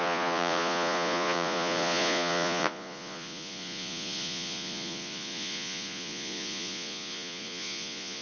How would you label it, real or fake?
fake